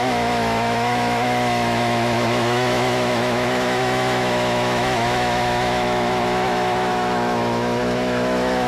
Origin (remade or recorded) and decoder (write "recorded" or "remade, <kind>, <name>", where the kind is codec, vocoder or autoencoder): remade, autoencoder, DAC-VAE